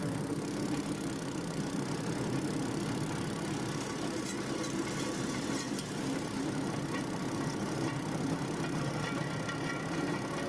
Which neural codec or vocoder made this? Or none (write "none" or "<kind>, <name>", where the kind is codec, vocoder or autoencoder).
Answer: none